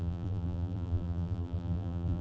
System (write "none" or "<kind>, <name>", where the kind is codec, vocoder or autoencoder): vocoder, BigVGAN v2